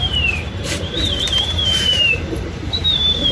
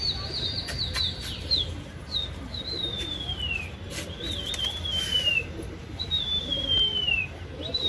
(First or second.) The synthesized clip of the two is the first